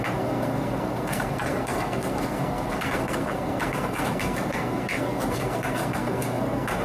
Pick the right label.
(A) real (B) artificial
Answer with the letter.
B